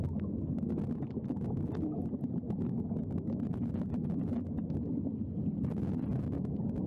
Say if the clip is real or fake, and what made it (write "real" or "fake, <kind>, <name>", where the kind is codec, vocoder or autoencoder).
real